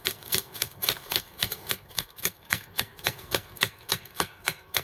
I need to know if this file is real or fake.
fake